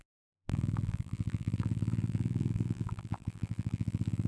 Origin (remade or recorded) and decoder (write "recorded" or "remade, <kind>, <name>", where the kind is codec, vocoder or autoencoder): remade, vocoder, BigVGAN v2